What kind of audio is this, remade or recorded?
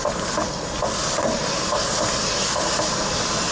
recorded